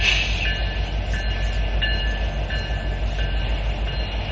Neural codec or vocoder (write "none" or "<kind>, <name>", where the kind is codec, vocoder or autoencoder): none